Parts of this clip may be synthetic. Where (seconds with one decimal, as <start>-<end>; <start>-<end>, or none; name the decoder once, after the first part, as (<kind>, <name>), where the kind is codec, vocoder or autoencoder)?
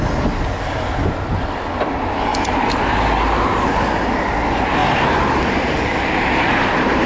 4.8-7.1 (vocoder, BigVGAN v2)